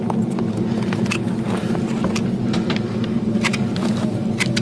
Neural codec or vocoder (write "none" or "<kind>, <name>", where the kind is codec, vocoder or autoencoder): none